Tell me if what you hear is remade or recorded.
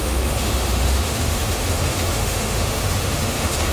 remade